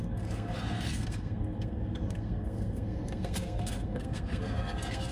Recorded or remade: remade